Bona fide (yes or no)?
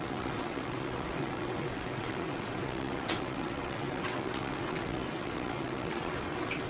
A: no